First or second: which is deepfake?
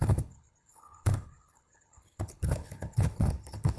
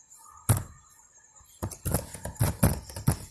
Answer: first